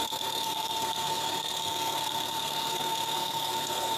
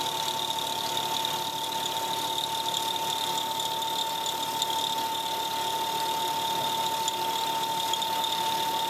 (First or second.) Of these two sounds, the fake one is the first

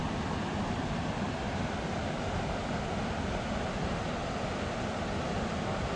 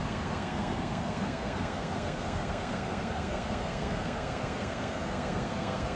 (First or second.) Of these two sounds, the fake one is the second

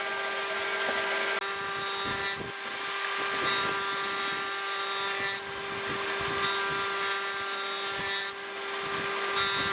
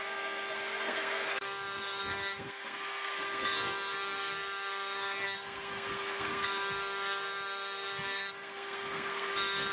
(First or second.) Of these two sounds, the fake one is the second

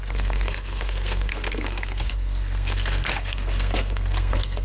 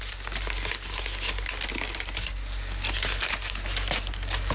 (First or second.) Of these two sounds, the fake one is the first